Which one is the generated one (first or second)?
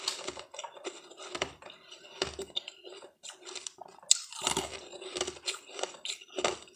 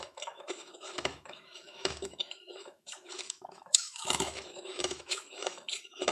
second